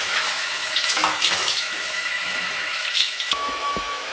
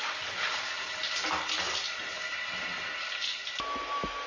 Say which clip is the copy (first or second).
first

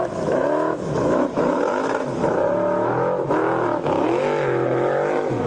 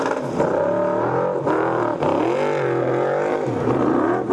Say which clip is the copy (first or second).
first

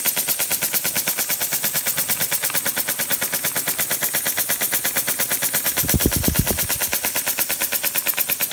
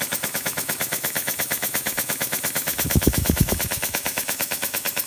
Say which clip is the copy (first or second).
second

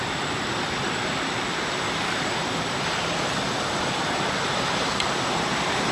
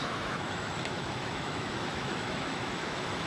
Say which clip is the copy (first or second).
second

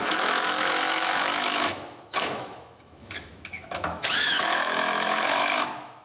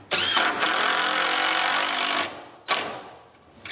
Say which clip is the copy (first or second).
first